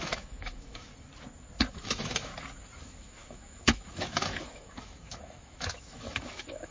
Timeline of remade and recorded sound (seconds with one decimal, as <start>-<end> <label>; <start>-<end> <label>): 0.0-0.9 remade; 0.9-1.7 recorded; 1.7-2.3 remade; 2.3-2.8 recorded; 2.8-6.7 remade